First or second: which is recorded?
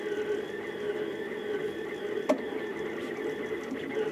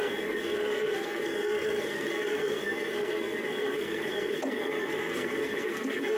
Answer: first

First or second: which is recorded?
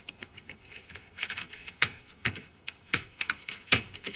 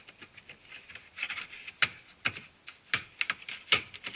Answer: second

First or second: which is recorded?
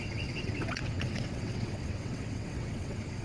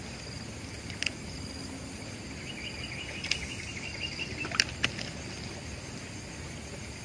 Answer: second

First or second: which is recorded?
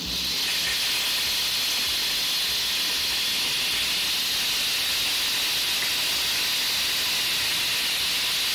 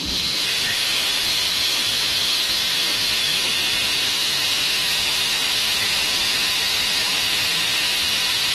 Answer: first